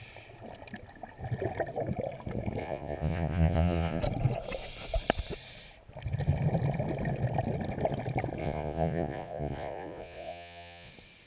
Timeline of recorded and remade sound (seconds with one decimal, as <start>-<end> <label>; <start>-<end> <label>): 0.0-2.6 recorded; 2.6-4.0 remade; 4.0-8.4 recorded; 8.4-10.9 remade; 10.9-11.3 recorded